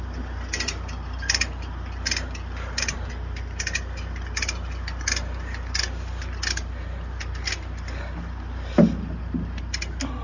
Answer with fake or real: real